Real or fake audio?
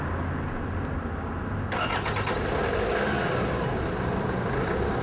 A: real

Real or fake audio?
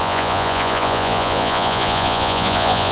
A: fake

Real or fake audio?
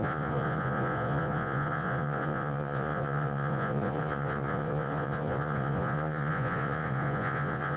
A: fake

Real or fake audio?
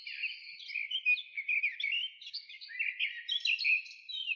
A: real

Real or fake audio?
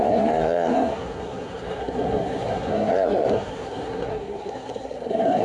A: fake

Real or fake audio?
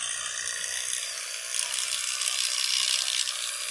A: real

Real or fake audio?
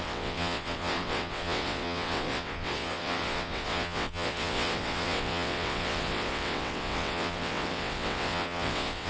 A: fake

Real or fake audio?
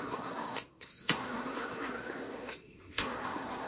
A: fake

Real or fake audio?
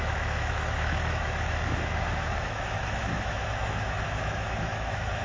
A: fake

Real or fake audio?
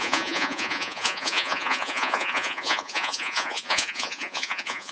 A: fake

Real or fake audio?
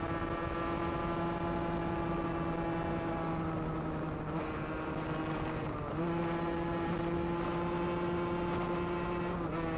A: real